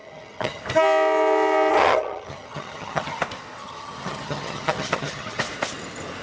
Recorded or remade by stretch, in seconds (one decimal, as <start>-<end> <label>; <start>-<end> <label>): 0.0-0.6 remade; 0.6-1.7 recorded; 1.7-3.2 remade; 3.2-3.6 recorded; 3.6-5.4 remade; 5.4-6.2 recorded